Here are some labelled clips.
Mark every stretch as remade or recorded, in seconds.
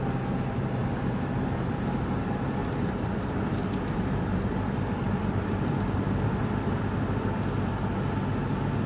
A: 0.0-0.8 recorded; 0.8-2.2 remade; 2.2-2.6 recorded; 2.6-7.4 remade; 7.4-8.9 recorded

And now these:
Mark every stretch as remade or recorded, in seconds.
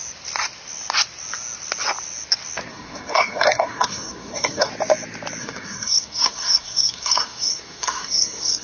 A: 0.0-2.7 recorded; 2.7-4.7 remade; 4.7-5.4 recorded; 5.4-8.6 remade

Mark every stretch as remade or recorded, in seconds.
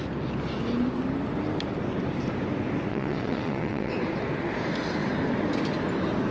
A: 0.0-2.9 recorded; 2.9-3.9 remade; 3.9-6.3 recorded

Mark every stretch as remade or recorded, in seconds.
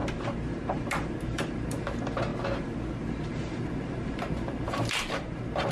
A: 0.0-1.2 recorded; 1.2-2.3 remade; 2.3-3.3 recorded; 3.3-5.7 remade